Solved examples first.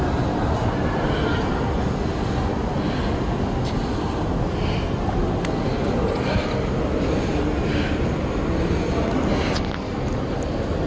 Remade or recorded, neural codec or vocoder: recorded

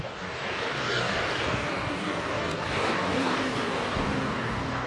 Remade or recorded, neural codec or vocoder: remade, codec, DAC